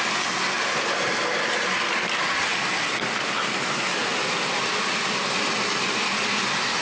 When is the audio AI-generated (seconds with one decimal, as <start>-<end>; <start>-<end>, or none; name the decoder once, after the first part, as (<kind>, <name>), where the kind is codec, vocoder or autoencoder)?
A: 2.5-3.0 (vocoder, BigVGAN v2); 4.0-6.2